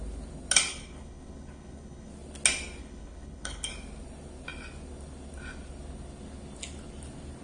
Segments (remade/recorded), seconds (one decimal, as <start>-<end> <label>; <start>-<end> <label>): 0.0-0.7 recorded; 0.7-2.1 remade; 2.1-2.8 recorded; 2.8-3.7 remade; 3.7-7.4 recorded